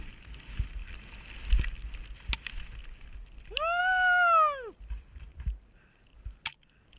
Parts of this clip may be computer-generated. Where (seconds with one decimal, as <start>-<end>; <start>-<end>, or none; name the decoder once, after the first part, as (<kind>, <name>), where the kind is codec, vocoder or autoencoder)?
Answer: none

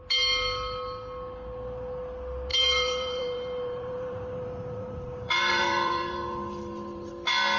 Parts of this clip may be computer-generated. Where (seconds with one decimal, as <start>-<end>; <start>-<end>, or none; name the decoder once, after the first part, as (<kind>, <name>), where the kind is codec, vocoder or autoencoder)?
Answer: 2.5-7.1 (vocoder, BigVGAN v2)

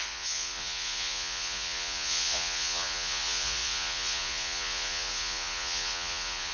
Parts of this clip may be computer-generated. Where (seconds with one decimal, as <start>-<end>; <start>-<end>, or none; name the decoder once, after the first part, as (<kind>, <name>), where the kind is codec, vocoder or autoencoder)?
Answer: 0.0-6.5 (vocoder, Vocos)

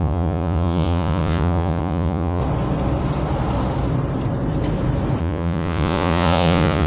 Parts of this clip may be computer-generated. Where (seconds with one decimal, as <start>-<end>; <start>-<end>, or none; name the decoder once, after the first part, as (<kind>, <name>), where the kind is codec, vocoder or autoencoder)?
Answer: 0.0-2.4 (vocoder, Vocos); 5.2-6.9

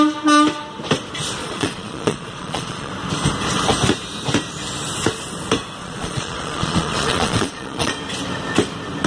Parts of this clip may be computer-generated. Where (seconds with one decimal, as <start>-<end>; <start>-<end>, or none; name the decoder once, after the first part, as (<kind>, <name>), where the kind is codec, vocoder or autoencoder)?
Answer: 1.4-2.9 (vocoder, Vocos); 5.8-7.9

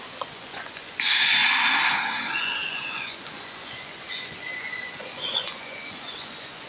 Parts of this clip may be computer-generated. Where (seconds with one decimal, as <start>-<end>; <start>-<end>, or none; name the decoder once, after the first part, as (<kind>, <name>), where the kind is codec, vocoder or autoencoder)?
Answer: 0.0-1.4 (vocoder, Vocos); 2.1-6.7